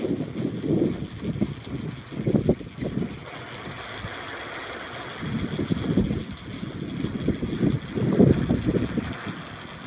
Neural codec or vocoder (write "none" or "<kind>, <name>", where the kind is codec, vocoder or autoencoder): none